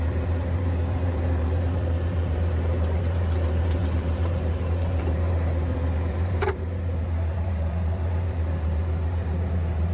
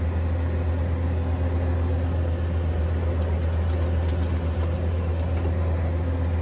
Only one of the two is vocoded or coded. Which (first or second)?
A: first